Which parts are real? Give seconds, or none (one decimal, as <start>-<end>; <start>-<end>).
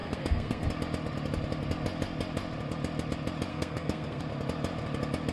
0.7-3.5; 4.2-5.3